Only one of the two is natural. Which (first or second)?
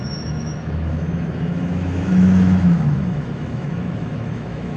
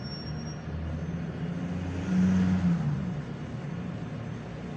second